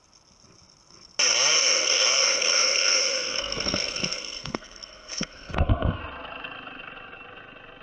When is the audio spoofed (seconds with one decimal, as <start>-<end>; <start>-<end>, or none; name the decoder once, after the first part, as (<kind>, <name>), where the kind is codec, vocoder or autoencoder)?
1.5-6.0 (codec, SNAC)

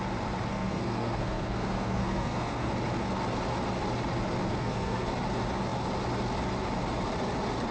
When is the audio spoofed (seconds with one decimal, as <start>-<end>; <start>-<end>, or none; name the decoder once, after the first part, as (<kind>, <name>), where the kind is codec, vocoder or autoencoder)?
0.5-2.7 (codec, SNAC); 4.5-5.1

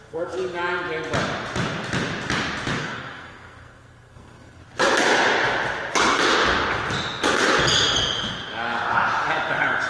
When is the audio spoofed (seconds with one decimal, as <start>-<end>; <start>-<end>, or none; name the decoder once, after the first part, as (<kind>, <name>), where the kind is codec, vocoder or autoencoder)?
0.0-0.4 (codec, SNAC); 2.8-4.6

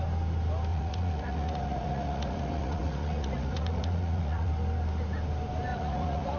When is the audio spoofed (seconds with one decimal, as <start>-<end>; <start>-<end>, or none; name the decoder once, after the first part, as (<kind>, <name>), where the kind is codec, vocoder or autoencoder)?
0.7-4.5 (vocoder, Vocos); 5.7-6.4